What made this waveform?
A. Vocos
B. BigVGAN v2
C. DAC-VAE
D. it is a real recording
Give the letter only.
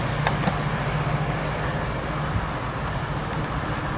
D